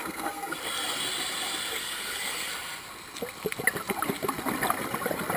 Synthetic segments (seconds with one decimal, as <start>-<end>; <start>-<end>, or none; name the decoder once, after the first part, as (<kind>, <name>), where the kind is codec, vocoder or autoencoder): 0.0-0.6 (codec, SNAC); 1.7-2.5